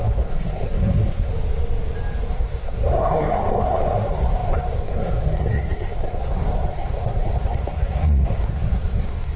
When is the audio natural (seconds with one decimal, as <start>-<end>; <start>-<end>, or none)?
1.3-2.3